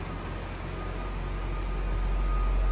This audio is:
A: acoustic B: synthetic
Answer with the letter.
A